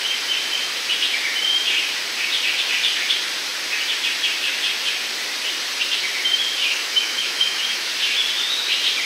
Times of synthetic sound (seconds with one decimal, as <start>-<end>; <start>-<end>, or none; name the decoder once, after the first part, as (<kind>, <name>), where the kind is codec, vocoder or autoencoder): 6.6-7.9 (autoencoder, DAC-VAE)